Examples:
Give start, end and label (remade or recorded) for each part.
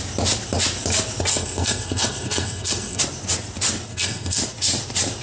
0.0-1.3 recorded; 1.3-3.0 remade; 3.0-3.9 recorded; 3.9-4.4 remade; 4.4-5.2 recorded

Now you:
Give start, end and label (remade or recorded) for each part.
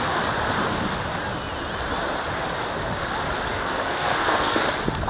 0.0-3.5 recorded; 3.5-4.6 remade; 4.6-5.1 recorded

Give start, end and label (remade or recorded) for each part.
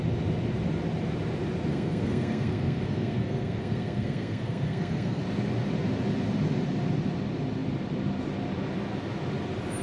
0.0-1.7 recorded; 1.7-5.2 remade; 5.2-9.8 recorded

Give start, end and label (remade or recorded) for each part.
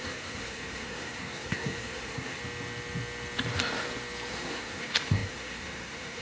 0.0-2.4 remade; 2.4-4.3 recorded; 4.3-6.2 remade